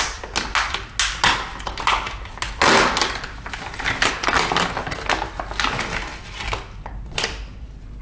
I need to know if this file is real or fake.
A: real